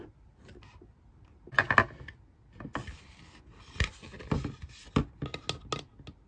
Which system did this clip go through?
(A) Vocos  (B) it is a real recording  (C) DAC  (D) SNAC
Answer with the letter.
B